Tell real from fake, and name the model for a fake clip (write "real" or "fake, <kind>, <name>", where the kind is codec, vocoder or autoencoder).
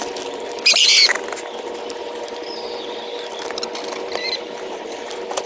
real